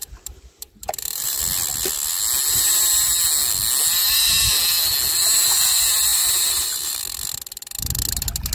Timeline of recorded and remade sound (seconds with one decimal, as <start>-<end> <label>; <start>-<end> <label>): 0.0-1.4 remade; 1.4-6.1 recorded; 6.1-7.0 remade; 7.0-8.5 recorded